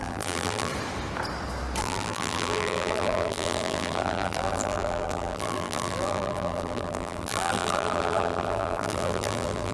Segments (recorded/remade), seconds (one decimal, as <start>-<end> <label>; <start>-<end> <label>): 0.0-0.7 remade; 0.7-1.8 recorded; 1.8-9.7 remade